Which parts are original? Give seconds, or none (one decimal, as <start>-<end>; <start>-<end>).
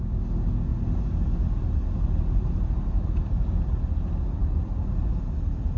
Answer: 0.0-0.7; 3.6-4.4; 4.9-5.8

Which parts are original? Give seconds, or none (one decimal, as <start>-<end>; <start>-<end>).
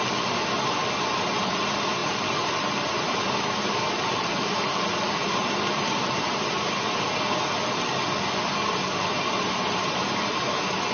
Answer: 0.0-2.0; 6.7-10.3